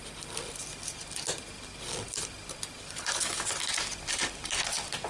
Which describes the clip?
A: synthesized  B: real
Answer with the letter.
B